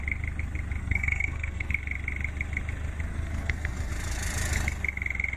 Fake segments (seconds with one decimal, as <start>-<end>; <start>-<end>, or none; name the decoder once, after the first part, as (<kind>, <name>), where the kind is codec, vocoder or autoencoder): 0.8-1.7 (codec, SNAC); 3.1-3.9